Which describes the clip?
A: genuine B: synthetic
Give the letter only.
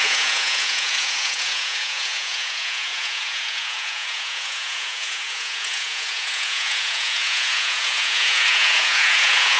B